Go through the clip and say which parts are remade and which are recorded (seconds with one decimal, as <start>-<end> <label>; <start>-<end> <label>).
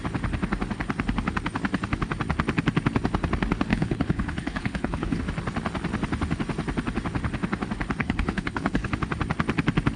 0.0-3.7 recorded; 3.7-5.2 remade; 5.2-8.0 recorded; 8.0-8.9 remade; 8.9-10.0 recorded